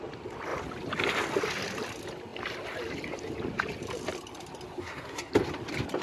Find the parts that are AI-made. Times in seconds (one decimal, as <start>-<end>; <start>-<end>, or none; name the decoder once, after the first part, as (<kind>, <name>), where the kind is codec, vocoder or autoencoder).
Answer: 4.8-5.3 (codec, SNAC)